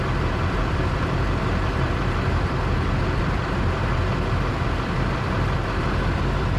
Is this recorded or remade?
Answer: remade